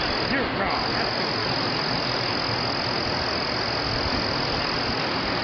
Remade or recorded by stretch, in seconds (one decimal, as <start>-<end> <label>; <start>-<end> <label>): 0.0-5.4 recorded